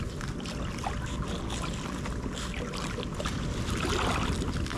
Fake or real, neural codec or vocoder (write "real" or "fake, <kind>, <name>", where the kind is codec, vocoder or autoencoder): real